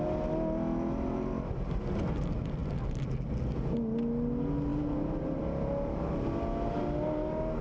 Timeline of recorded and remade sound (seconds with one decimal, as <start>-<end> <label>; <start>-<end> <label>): 0.0-7.6 recorded